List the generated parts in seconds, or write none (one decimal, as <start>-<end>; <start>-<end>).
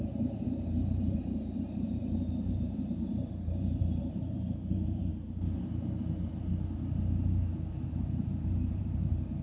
0.0-2.0; 2.5-5.1; 7.9-9.4